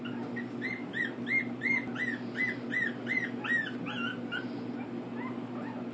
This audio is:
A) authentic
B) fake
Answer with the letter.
A